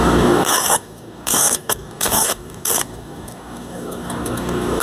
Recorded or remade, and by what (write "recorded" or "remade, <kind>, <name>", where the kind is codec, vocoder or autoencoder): remade, codec, DAC